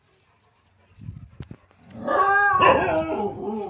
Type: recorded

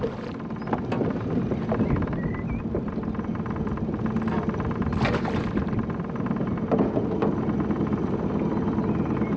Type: recorded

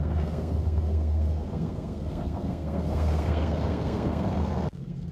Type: remade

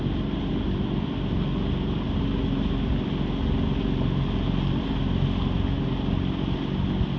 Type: recorded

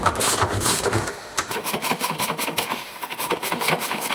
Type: remade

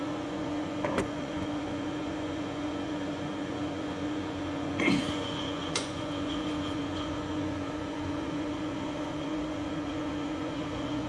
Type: remade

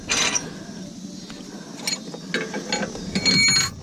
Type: recorded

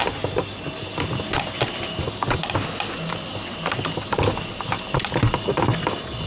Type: recorded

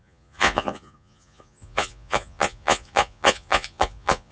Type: remade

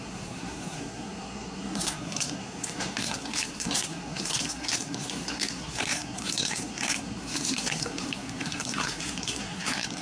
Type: remade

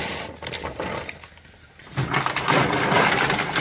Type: recorded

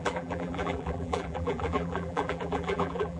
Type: remade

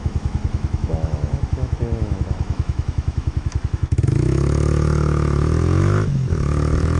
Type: remade